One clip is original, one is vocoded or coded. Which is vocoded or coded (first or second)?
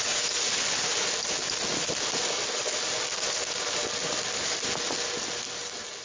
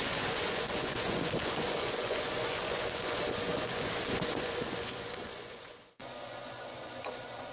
second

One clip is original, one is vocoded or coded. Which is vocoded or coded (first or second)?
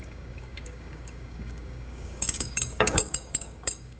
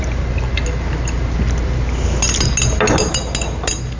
first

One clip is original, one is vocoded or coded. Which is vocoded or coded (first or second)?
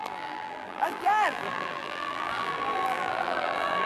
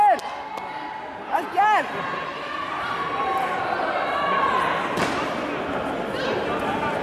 first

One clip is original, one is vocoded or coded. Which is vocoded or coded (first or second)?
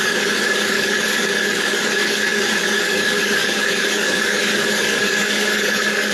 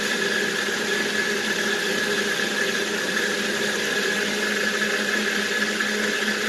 first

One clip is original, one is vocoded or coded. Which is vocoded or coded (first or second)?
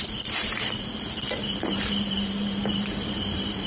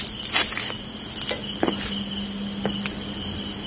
first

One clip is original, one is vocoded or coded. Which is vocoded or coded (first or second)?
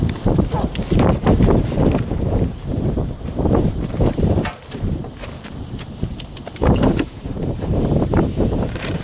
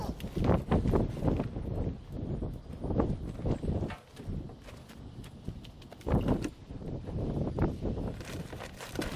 first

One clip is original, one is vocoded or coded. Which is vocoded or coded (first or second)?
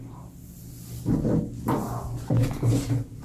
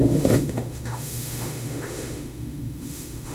second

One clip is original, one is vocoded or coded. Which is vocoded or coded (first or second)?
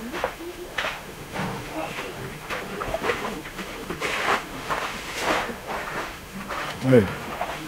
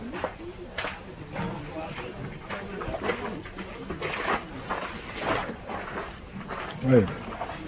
first